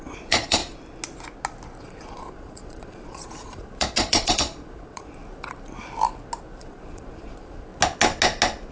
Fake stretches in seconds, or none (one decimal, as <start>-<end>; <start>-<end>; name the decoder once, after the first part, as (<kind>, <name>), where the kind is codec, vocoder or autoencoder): 0.0-0.6 (vocoder, Vocos); 1.8-5.2; 6.6-7.7